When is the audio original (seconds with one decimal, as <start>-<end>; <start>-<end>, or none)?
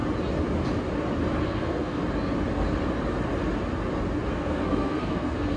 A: 0.0-1.4; 2.0-4.3